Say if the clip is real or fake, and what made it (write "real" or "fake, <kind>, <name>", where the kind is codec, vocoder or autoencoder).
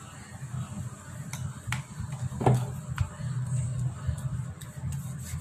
real